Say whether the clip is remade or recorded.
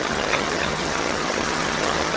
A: remade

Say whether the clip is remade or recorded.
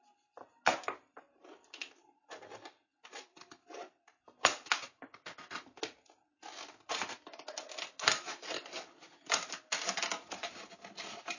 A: recorded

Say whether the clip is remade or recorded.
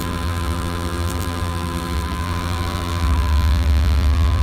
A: remade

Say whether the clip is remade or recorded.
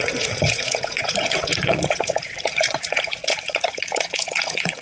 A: remade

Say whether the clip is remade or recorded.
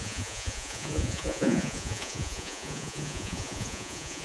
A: remade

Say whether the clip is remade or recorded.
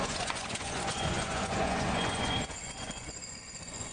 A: remade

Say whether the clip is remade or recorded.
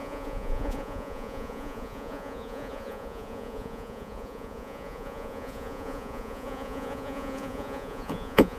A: remade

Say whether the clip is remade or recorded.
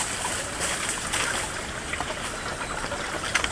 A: recorded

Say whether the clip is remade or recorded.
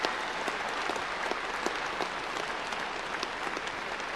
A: recorded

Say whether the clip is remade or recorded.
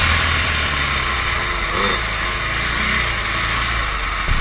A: recorded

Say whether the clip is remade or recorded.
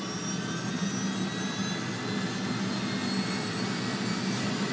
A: recorded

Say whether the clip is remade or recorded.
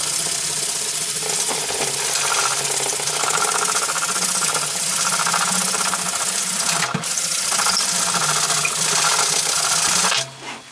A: recorded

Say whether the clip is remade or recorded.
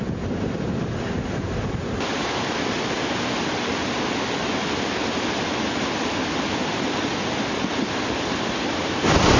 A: recorded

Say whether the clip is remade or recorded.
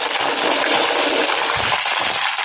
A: recorded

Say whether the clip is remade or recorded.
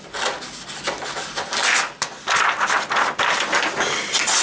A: recorded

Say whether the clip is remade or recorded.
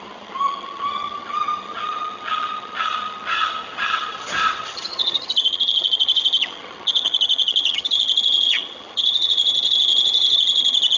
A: remade